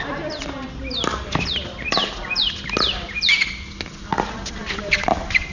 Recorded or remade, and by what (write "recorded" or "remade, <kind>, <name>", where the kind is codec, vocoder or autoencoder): recorded